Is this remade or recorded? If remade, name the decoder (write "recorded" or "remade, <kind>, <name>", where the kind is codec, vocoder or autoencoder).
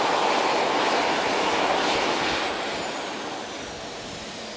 recorded